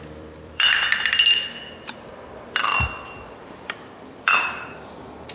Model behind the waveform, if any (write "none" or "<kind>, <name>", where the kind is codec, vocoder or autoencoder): vocoder, BigVGAN v2